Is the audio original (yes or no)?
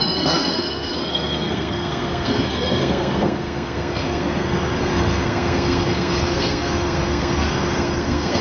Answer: no